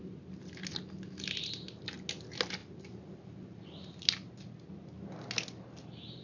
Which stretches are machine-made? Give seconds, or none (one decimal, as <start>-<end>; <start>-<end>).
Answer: none

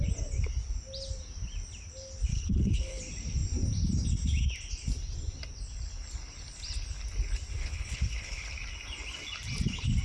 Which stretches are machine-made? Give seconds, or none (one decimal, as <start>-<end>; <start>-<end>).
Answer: 2.3-3.0; 7.6-8.5

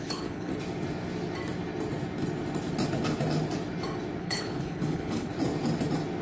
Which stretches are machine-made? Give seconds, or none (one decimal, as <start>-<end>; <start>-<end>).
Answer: 0.0-0.5; 4.2-5.3

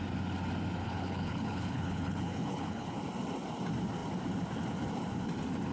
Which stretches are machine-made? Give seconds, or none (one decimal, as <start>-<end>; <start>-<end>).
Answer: 0.8-3.0

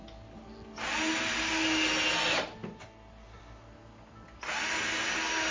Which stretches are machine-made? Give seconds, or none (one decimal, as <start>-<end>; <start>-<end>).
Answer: none

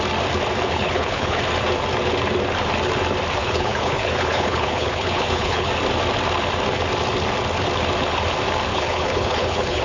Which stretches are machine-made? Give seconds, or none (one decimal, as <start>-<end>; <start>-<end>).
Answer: 0.7-1.4; 3.4-5.7; 8.7-9.8

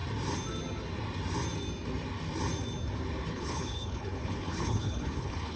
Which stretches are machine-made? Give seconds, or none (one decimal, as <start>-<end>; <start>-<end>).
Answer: 3.3-5.6

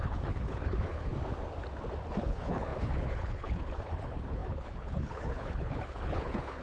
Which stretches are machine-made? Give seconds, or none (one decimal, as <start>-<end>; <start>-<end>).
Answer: 0.0-1.1; 2.2-6.6